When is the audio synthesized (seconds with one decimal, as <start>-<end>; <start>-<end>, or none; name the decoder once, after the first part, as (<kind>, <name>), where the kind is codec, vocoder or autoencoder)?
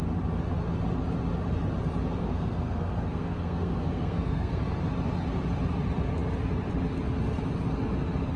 2.2-4.6 (codec, SNAC)